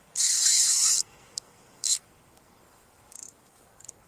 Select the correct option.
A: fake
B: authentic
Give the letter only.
A